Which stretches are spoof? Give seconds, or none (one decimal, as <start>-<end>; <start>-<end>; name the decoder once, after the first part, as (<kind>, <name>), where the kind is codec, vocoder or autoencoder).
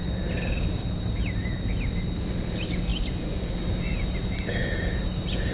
0.8-2.3 (vocoder, BigVGAN v2)